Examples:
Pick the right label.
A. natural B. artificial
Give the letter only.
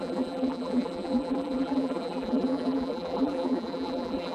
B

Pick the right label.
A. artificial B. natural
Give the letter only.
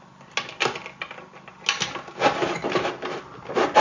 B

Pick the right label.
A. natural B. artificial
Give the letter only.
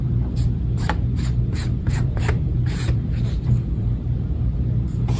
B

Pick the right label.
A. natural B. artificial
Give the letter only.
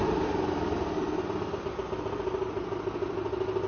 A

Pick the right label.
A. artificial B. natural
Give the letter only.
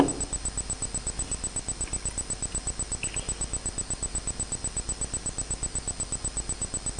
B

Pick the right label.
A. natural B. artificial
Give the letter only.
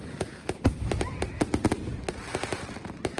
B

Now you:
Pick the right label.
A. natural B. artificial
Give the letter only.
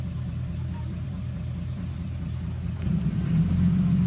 B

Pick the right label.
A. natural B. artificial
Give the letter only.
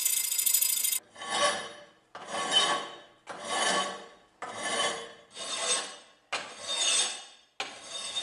A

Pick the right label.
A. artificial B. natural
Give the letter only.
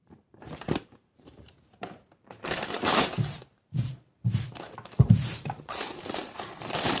A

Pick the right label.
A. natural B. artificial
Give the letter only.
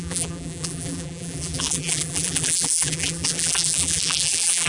B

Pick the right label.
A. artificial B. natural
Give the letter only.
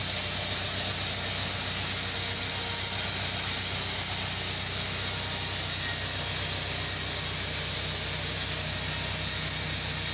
B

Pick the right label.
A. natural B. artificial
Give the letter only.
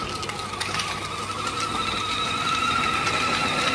A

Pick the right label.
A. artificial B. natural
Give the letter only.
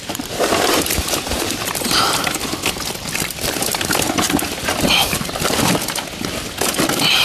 A